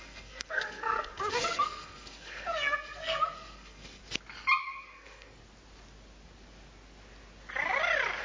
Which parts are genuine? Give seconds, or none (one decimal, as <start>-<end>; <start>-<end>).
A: 4.0-4.6; 5.4-8.2